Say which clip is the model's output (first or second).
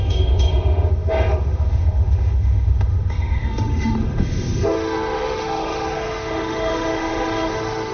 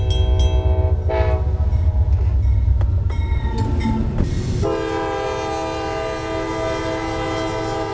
first